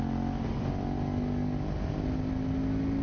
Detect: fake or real real